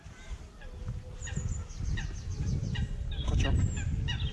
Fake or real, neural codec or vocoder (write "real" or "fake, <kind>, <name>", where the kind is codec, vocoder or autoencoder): real